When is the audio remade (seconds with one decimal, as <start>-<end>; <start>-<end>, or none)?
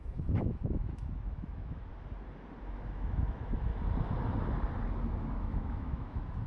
0.0-1.9; 2.6-3.7; 5.2-6.5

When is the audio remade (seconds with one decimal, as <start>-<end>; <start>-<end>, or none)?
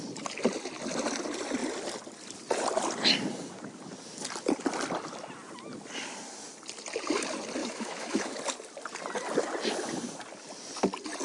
7.6-8.4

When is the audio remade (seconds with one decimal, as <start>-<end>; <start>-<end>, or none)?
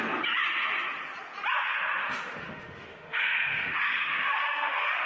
2.0-5.1